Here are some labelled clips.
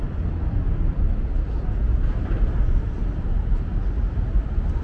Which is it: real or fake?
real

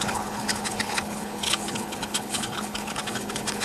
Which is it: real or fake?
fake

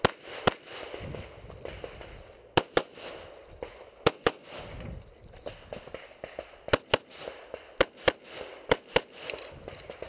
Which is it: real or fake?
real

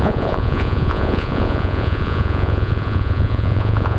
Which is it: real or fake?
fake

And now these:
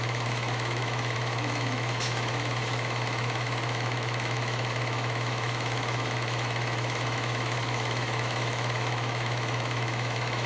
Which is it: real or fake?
fake